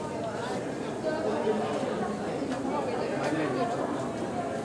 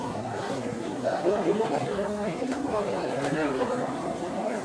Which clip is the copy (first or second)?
second